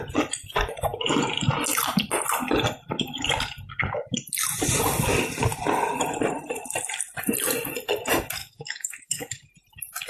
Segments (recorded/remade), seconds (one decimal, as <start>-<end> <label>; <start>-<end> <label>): 0.0-8.4 recorded; 8.4-9.5 remade; 9.5-10.1 recorded